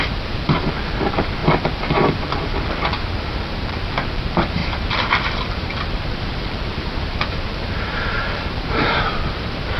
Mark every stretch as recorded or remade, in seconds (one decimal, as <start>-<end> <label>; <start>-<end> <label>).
0.0-9.8 remade